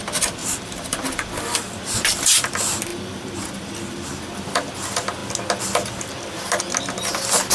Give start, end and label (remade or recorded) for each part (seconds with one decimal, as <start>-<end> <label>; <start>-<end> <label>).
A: 0.0-0.4 recorded; 0.4-1.3 remade; 1.3-7.5 recorded